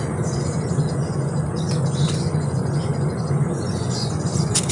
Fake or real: fake